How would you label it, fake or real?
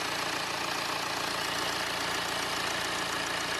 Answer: real